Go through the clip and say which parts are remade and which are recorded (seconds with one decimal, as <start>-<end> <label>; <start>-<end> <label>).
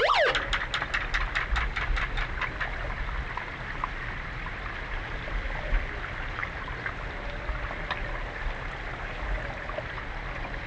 0.0-10.7 recorded